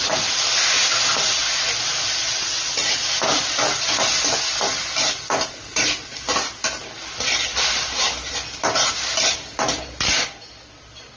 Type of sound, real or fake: real